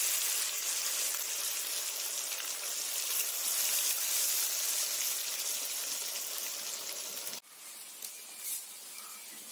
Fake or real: real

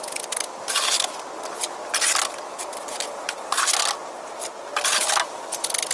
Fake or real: real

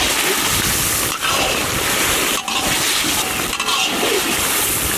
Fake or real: real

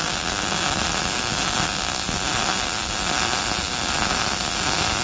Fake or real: real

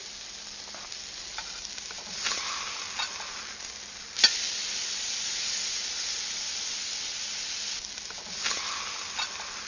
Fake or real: real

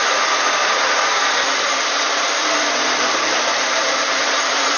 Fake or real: fake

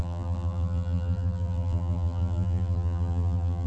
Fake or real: fake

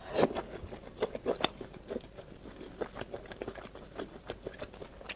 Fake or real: real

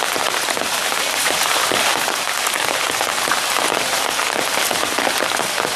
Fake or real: real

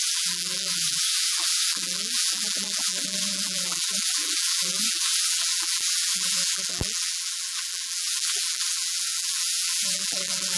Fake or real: fake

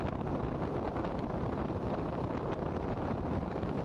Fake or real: fake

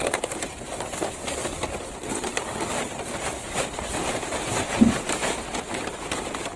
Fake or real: real